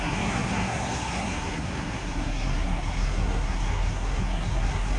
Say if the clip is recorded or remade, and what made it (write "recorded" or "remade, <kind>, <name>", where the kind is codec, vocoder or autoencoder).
remade, codec, SNAC